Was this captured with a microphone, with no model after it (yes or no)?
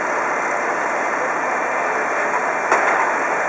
yes